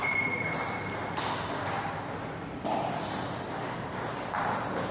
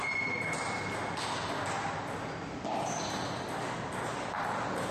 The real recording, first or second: second